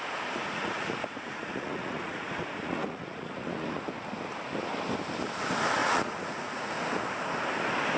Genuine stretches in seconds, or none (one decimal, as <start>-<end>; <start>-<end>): 0.0-0.4; 3.8-5.8; 6.7-8.0